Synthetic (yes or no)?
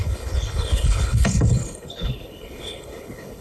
yes